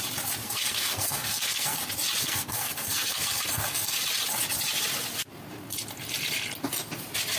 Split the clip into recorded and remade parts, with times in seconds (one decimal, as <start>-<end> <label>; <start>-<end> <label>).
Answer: 0.0-0.4 recorded; 0.4-1.8 remade; 1.8-2.2 recorded; 2.2-4.0 remade; 4.0-7.4 recorded